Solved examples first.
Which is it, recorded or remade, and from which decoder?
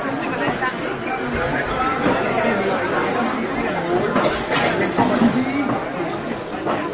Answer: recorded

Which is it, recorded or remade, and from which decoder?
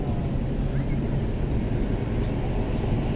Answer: recorded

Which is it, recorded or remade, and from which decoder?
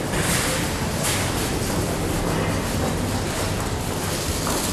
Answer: recorded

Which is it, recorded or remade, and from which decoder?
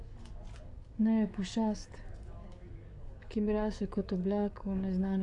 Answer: remade, codec, DAC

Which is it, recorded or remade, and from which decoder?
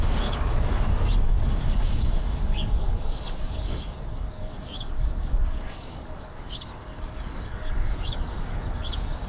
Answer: remade, codec, DAC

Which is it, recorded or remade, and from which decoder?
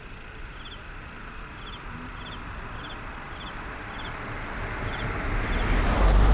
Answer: recorded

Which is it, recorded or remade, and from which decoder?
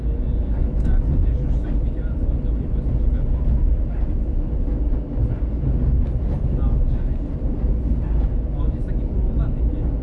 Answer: recorded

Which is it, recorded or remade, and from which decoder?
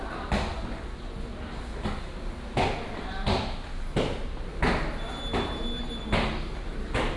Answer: recorded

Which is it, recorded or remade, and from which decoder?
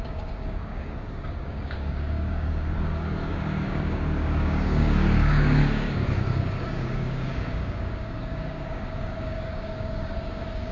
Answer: remade, codec, DAC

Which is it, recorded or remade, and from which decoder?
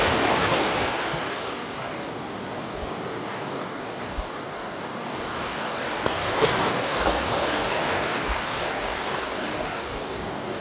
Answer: remade, codec, DAC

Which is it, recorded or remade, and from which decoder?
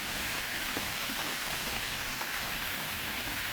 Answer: remade, codec, DAC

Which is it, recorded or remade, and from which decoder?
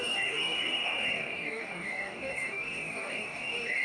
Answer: remade, codec, DAC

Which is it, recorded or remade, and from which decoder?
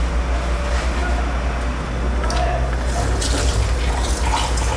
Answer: recorded